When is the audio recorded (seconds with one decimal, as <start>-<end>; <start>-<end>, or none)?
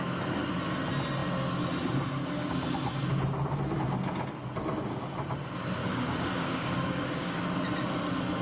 0.0-5.8; 7.4-8.4